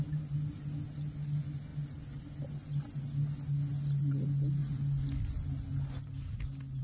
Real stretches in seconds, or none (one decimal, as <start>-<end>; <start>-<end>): 0.0-6.8

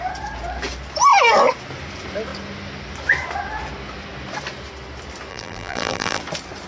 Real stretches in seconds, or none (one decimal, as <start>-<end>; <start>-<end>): 0.0-5.3; 6.2-6.7

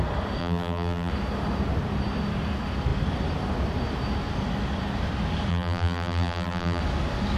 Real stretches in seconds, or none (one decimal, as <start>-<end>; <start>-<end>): 0.0-0.4; 1.1-5.5; 6.8-7.4

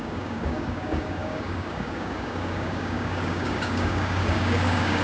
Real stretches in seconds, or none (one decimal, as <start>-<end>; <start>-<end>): none

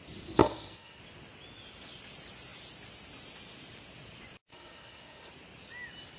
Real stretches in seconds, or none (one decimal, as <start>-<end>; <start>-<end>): 0.0-0.4; 1.0-4.5; 5.3-6.2

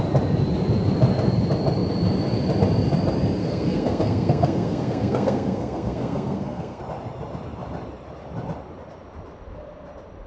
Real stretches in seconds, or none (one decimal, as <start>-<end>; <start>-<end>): 0.0-3.4; 6.8-10.3

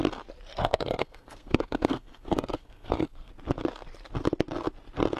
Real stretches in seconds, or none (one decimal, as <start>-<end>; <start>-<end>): 0.0-0.6; 3.3-5.2